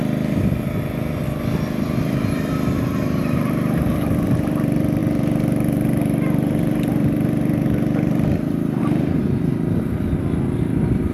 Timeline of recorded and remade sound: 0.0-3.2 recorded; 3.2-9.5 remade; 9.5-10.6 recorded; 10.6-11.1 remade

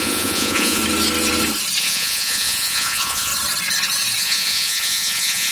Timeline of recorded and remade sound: 0.0-0.8 remade; 0.8-1.8 recorded; 1.8-3.3 remade; 3.3-4.2 recorded; 4.2-5.5 remade

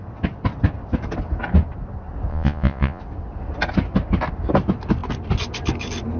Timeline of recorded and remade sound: 0.0-2.3 recorded; 2.3-3.0 remade; 3.0-6.2 recorded

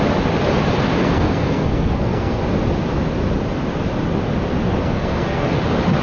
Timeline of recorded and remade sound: 0.0-1.0 recorded; 1.0-2.4 remade; 2.4-4.8 recorded; 4.8-5.6 remade; 5.6-6.0 recorded

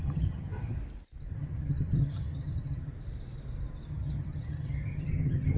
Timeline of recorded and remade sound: 0.0-0.8 remade; 0.8-1.3 recorded; 1.3-2.9 remade; 2.9-3.9 recorded; 3.9-5.6 remade

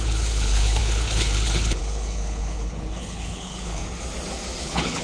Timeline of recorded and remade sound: 0.0-3.8 remade; 3.8-4.6 recorded; 4.6-5.0 remade

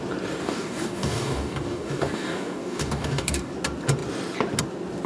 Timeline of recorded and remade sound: 0.0-0.4 recorded; 0.4-3.5 remade; 3.5-5.1 recorded

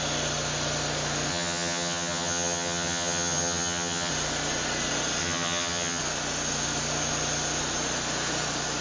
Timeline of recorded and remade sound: 0.0-1.3 recorded; 1.3-4.1 remade; 4.1-5.2 recorded; 5.2-6.0 remade; 6.0-8.8 recorded